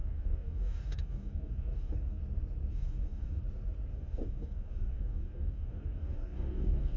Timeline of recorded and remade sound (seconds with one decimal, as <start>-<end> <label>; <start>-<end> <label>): 0.0-2.2 remade; 2.2-2.7 recorded; 2.7-3.4 remade; 3.4-3.9 recorded; 3.9-7.0 remade